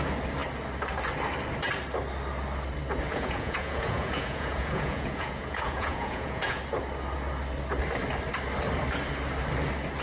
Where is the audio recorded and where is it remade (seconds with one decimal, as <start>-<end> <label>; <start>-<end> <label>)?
0.0-3.1 recorded; 3.1-6.6 remade; 6.6-10.0 recorded